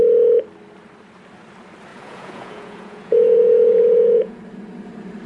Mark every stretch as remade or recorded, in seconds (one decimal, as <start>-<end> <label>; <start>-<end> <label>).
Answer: 0.0-1.9 recorded; 1.9-4.4 remade; 4.4-5.3 recorded